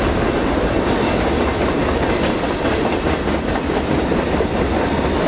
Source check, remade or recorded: recorded